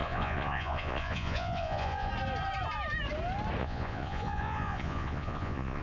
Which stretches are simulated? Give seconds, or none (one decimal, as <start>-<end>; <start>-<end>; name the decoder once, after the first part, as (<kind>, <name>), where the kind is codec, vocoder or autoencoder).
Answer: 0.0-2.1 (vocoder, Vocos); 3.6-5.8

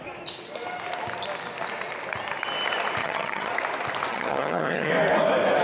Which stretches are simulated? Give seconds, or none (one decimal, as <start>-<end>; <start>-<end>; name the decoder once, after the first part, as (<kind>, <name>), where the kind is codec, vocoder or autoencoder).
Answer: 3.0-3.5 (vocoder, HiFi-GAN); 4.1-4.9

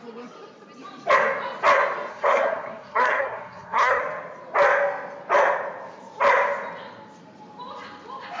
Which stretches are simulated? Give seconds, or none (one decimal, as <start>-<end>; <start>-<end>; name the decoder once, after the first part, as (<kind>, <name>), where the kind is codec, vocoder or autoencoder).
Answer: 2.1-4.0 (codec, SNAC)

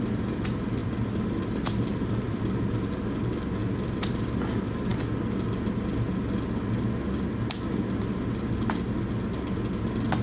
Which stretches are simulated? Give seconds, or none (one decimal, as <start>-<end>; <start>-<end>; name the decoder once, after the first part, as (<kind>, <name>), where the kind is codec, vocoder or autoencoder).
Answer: 0.8-2.7 (vocoder, BigVGAN v2); 3.6-4.4

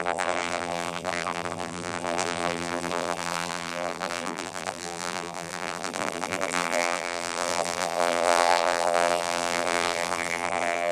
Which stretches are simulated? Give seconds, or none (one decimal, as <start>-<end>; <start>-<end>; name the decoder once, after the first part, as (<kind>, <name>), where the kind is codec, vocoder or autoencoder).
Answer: 0.0-10.9 (vocoder, BigVGAN v2)

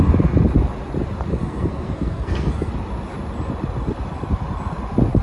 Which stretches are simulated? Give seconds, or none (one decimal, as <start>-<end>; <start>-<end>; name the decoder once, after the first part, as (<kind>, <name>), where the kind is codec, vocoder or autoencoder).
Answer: 1.3-2.7 (codec, SNAC)

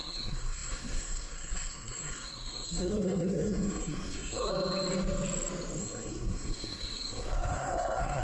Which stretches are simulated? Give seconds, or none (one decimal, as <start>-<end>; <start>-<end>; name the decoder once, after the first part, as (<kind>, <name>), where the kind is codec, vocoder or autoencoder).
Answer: 0.0-4.5 (codec, SNAC); 5.8-8.2